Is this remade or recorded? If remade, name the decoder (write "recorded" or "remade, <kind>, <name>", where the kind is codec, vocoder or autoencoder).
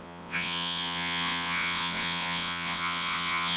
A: remade, vocoder, WaveNeXt